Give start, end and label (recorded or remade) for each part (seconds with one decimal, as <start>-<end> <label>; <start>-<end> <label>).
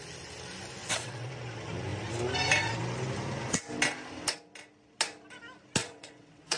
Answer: 0.0-0.8 recorded; 0.8-1.3 remade; 1.3-5.8 recorded; 5.8-6.6 remade